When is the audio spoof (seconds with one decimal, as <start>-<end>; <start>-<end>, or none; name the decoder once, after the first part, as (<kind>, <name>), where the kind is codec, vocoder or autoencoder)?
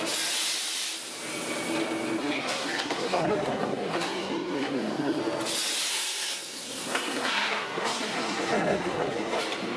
2.2-5.2 (codec, SNAC); 5.9-9.4